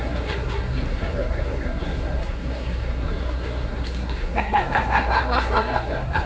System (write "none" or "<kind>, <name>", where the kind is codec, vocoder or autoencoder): codec, SNAC